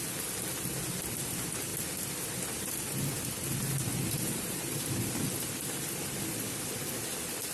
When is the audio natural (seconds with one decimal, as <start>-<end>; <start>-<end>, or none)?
0.0-3.9; 5.0-7.5